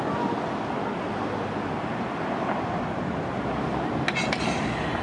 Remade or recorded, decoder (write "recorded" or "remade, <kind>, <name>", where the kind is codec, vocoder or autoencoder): recorded